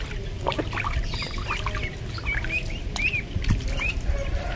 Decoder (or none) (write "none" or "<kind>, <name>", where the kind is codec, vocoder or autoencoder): none